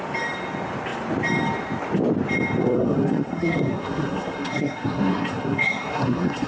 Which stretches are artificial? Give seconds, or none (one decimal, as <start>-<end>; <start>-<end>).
2.6-6.5